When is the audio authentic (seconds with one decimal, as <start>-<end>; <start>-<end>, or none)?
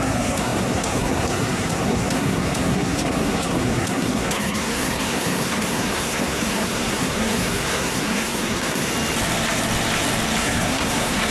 8.9-10.4